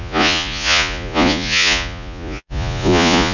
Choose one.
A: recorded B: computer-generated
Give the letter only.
B